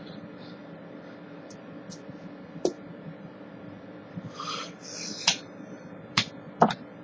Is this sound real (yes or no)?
no